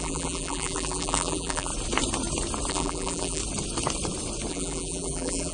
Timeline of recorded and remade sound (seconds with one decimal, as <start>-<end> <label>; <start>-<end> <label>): 0.0-1.7 remade; 1.7-2.7 recorded; 2.7-3.4 remade; 3.4-4.5 recorded; 4.5-5.5 remade